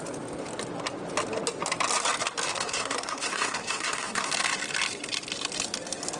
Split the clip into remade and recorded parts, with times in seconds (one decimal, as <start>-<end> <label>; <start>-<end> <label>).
0.0-2.5 recorded; 2.5-4.3 remade; 4.3-6.2 recorded